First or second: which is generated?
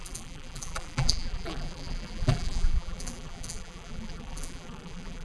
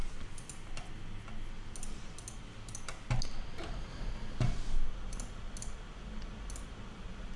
first